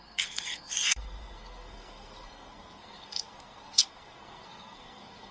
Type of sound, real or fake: fake